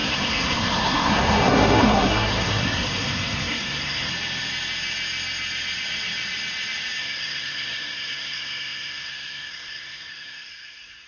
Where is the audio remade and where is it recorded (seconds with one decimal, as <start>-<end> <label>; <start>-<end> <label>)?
0.0-4.1 remade; 4.1-7.0 recorded; 7.0-11.1 remade